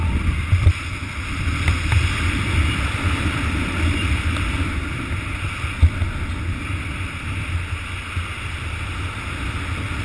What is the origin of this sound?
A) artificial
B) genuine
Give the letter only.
B